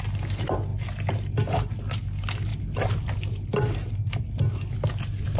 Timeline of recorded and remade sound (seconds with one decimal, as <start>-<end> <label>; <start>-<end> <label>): 0.0-5.4 recorded